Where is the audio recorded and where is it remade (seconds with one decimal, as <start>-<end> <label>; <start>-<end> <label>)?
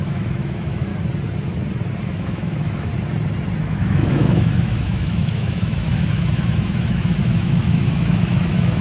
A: 0.0-0.9 remade; 0.9-2.1 recorded; 2.1-2.9 remade; 2.9-3.6 recorded; 3.6-8.8 remade